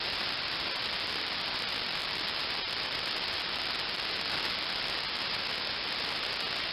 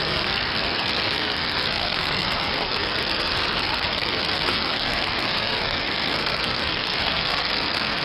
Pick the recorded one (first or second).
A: first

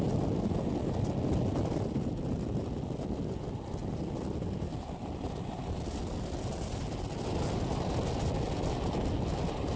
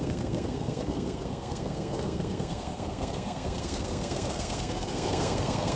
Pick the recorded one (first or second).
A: first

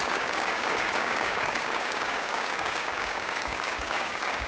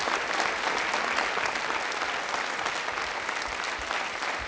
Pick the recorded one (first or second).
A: second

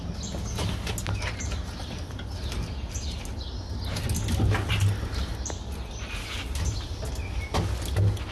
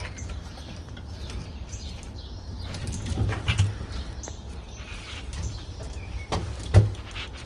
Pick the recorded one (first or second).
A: first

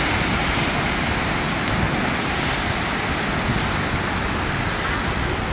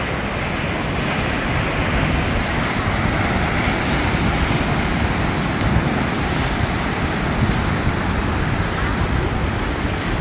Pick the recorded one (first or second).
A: first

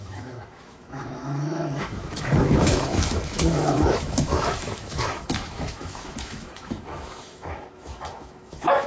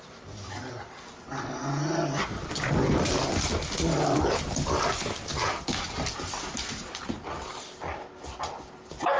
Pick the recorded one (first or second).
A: second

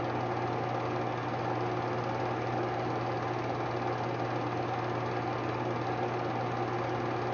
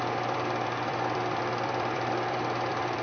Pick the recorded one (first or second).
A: first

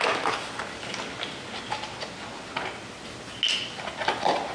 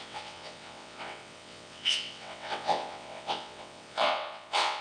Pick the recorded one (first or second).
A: first